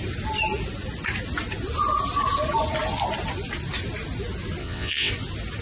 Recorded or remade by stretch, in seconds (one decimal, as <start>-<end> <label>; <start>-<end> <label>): 0.0-4.6 recorded; 4.6-5.1 remade; 5.1-5.6 recorded